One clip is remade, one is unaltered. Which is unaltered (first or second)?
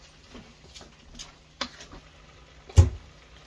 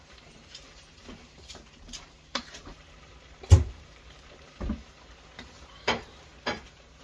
first